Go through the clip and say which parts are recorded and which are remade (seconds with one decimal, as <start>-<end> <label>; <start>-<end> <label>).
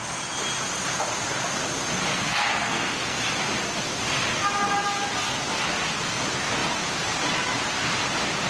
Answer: 0.0-2.1 recorded; 2.1-3.2 remade; 3.2-8.5 recorded